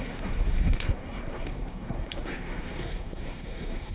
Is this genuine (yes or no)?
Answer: no